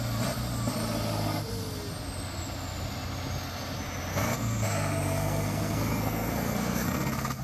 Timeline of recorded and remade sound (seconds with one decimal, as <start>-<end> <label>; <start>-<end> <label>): 0.0-4.1 recorded; 4.1-7.4 remade